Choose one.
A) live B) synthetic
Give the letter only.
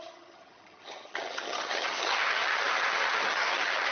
B